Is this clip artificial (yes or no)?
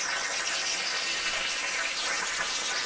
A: no